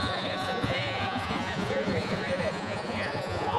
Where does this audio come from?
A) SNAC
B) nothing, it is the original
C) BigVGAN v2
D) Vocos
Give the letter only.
D